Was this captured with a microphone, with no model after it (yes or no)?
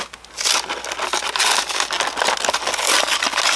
yes